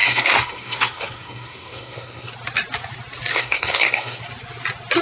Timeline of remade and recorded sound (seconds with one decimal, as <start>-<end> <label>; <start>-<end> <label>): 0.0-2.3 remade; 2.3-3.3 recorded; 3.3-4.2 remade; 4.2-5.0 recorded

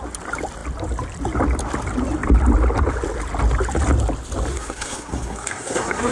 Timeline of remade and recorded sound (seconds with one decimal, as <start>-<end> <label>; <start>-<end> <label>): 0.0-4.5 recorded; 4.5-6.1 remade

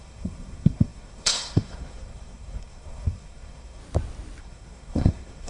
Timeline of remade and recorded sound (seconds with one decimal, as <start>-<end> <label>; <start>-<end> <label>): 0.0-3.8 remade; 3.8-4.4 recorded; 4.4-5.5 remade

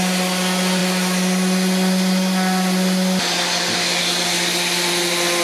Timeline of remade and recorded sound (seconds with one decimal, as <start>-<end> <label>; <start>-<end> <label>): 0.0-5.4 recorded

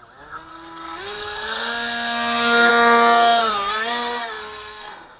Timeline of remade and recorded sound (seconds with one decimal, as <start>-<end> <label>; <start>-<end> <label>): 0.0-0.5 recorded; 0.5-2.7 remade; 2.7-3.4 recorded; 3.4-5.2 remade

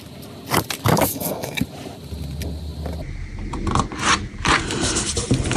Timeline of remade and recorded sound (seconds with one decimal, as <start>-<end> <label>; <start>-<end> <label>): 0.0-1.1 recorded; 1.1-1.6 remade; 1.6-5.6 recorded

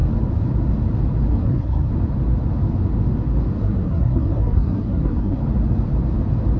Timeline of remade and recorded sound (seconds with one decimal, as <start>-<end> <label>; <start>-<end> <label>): 0.0-1.3 recorded; 1.3-1.9 remade; 1.9-3.6 recorded; 3.6-5.4 remade; 5.4-6.6 recorded